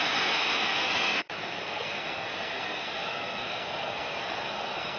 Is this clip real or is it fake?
fake